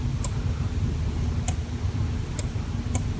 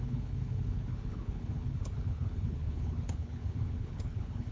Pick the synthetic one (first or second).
second